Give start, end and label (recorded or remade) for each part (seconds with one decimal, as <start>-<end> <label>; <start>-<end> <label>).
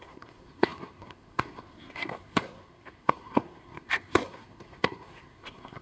0.0-5.8 remade